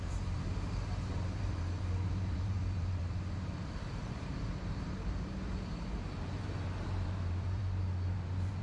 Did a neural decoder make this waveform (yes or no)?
yes